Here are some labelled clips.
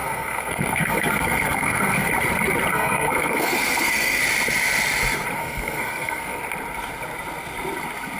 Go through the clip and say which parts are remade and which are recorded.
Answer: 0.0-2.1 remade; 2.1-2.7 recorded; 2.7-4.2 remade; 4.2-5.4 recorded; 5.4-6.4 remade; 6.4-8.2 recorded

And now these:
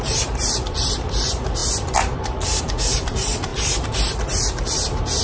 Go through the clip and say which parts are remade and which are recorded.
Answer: 0.0-5.2 remade

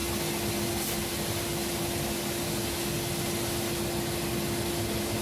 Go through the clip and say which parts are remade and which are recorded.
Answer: 0.0-5.2 recorded

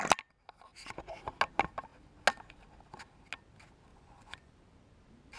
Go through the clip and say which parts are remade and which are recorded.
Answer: 0.0-3.9 recorded; 3.9-4.5 remade; 4.5-5.4 recorded

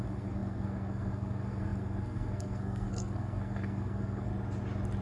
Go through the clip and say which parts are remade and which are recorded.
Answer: 0.0-4.3 remade; 4.3-5.0 recorded